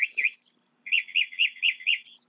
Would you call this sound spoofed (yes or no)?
no